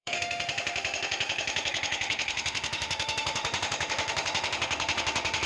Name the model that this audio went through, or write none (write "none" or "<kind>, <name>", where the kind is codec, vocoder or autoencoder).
autoencoder, DAC-VAE